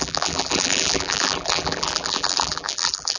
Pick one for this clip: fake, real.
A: fake